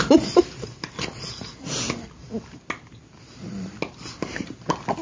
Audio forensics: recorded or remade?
recorded